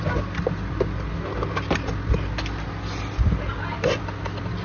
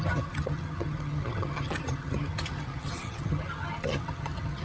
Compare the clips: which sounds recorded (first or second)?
first